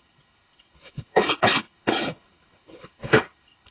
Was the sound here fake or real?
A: fake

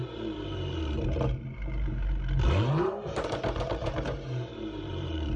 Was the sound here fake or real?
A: fake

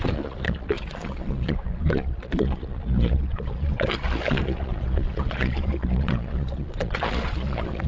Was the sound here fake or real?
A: fake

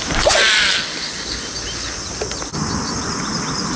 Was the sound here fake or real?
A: real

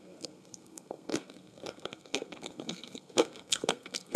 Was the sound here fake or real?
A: fake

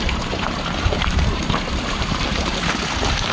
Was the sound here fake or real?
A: fake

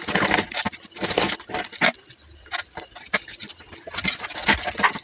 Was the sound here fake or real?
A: real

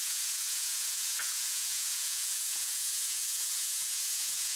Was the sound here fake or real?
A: fake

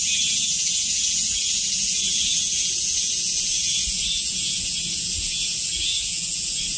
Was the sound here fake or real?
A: fake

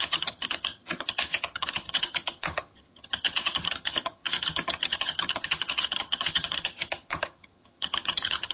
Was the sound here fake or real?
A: fake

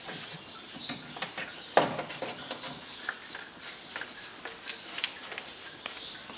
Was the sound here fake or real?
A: real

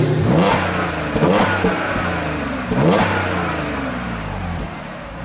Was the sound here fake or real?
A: fake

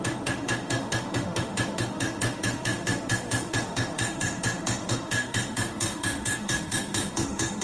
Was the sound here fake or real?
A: fake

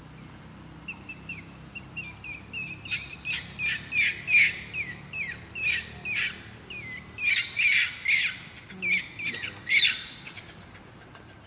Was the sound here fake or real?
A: real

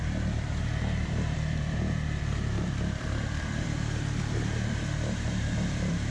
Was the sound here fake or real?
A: fake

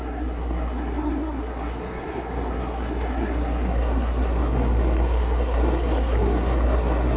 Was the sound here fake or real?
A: fake